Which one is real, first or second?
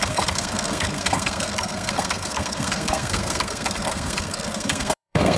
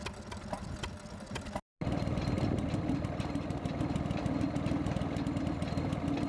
second